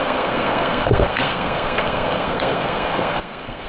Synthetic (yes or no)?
yes